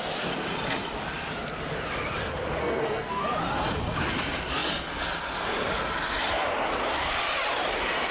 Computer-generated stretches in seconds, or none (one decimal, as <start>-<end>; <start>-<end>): 2.6-3.2